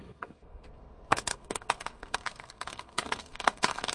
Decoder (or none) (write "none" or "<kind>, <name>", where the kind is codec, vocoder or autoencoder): codec, SNAC